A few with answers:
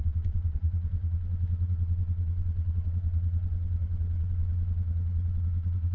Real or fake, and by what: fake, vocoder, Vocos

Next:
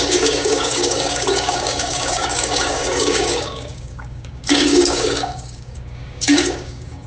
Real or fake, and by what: fake, codec, DAC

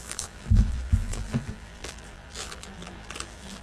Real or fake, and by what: fake, vocoder, BigVGAN v2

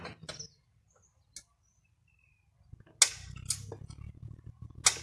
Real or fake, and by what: real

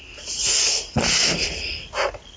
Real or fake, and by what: real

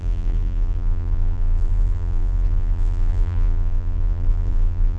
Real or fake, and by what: fake, vocoder, BigVGAN v2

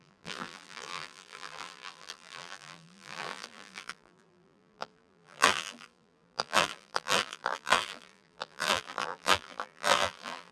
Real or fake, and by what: fake, vocoder, BigVGAN v2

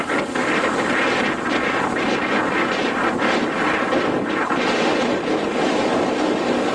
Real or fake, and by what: real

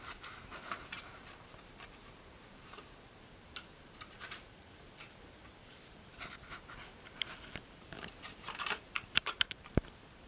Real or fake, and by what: fake, vocoder, BigVGAN v2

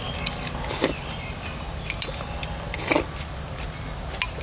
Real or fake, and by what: real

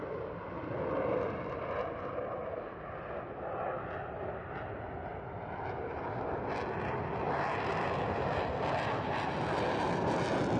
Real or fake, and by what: real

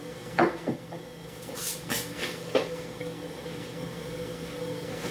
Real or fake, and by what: fake, codec, SNAC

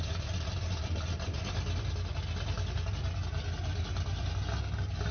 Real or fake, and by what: real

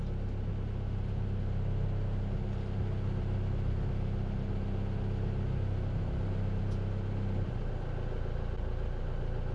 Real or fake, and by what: real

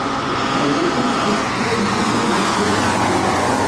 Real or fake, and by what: fake, vocoder, Vocos